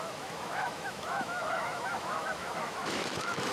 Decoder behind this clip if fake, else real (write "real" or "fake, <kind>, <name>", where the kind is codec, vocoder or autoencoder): fake, autoencoder, DAC-VAE